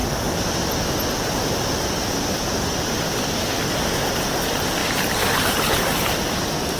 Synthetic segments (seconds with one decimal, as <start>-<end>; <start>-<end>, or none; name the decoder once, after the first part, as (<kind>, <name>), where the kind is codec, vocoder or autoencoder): none